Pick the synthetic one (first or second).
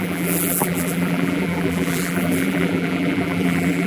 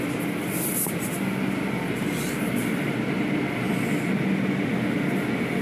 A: first